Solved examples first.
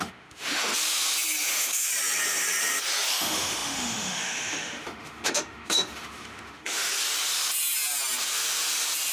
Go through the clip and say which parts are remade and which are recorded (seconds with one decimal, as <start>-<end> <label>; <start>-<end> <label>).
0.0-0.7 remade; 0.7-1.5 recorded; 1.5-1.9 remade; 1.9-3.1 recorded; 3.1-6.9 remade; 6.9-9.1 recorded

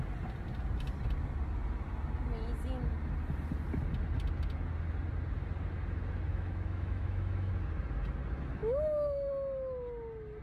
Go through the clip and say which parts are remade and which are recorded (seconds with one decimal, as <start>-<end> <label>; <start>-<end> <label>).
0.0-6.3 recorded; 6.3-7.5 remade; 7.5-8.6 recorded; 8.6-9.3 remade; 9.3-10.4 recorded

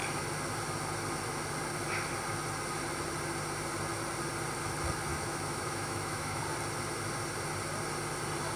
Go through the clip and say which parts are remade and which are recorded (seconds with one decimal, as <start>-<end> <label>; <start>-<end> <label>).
0.0-5.1 recorded; 5.1-6.4 remade; 6.4-8.6 recorded

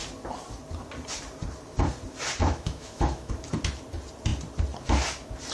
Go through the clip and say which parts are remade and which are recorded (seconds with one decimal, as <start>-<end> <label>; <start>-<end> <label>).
0.0-2.4 recorded; 2.4-3.3 remade; 3.3-5.5 recorded

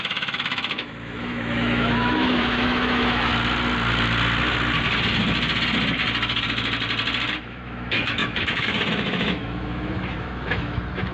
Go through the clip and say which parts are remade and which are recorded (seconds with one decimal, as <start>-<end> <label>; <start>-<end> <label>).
0.0-3.3 remade; 3.3-7.4 recorded; 7.4-11.1 remade

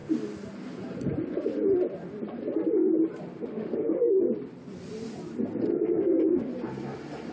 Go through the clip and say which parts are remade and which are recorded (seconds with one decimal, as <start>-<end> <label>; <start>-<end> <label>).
0.0-3.3 recorded; 3.3-4.2 remade; 4.2-5.7 recorded; 5.7-6.5 remade; 6.5-7.3 recorded